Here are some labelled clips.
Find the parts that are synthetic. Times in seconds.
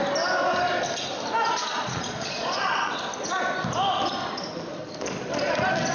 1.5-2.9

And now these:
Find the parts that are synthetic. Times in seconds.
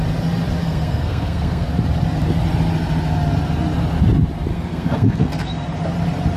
0.6-1.7; 4.5-5.5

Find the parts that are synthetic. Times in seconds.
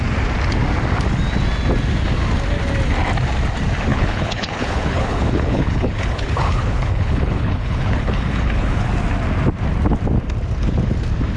3.9-8.9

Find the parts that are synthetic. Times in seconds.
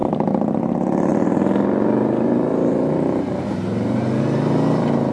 0.0-0.6; 1.1-4.2